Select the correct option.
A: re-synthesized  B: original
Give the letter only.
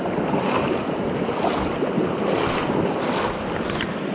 B